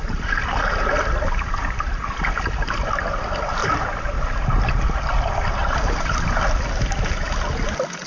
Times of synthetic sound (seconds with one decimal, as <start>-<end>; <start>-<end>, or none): 3.6-4.1; 5.6-6.4